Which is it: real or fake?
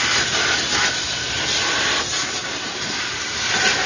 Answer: real